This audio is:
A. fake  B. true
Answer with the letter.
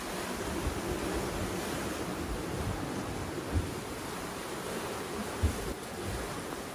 B